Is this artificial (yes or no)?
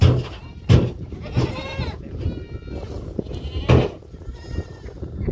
no